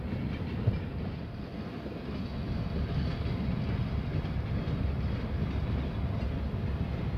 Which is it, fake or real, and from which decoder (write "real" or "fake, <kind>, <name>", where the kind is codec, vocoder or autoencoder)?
real